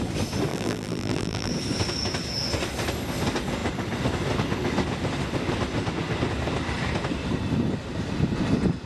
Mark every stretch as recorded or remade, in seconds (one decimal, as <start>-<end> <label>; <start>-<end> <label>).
0.0-0.5 recorded; 0.5-1.5 remade; 1.5-8.9 recorded